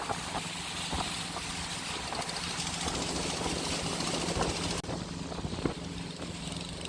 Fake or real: real